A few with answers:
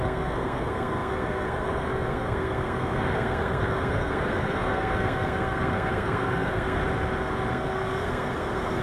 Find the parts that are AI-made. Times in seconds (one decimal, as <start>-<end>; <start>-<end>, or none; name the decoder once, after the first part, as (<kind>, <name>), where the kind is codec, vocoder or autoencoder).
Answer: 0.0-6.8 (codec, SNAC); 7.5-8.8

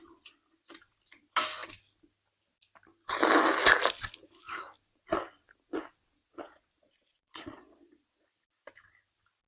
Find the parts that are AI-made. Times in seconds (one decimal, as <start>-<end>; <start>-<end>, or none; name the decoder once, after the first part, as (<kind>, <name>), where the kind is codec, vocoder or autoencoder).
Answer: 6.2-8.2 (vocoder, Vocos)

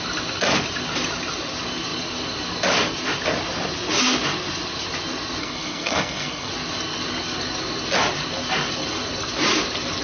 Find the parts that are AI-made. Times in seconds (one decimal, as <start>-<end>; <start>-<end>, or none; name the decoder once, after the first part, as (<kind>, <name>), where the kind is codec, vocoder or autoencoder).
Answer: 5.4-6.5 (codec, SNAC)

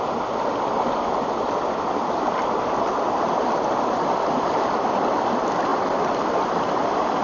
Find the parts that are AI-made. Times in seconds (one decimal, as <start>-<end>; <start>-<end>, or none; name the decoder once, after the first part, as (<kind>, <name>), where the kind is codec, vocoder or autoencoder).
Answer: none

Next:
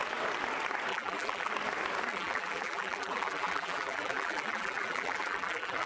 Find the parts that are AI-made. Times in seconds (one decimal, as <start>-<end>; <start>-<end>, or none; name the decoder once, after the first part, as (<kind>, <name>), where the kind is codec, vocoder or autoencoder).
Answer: 0.9-1.5 (vocoder, BigVGAN v2); 2.1-5.9